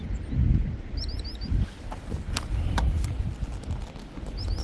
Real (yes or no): yes